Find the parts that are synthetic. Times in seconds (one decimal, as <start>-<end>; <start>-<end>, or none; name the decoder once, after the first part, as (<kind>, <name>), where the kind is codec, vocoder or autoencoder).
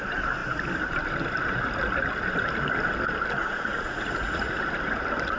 3.4-4.6 (vocoder, Vocos)